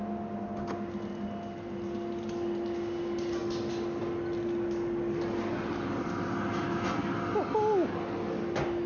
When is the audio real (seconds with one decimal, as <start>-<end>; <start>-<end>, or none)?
0.0-8.9